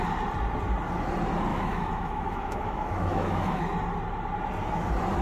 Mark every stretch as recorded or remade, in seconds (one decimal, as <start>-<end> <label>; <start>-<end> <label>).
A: 0.0-1.5 recorded; 1.5-3.6 remade; 3.6-5.2 recorded